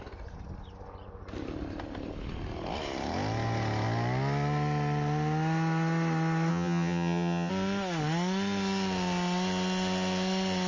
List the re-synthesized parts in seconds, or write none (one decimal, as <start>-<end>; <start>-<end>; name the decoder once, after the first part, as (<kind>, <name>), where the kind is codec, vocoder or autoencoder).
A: 6.5-7.5 (vocoder, HiFi-GAN)